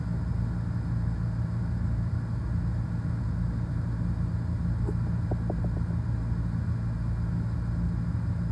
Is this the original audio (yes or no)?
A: yes